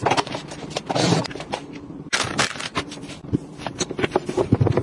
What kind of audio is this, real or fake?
fake